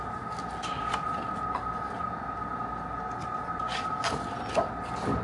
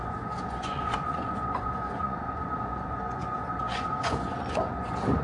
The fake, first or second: second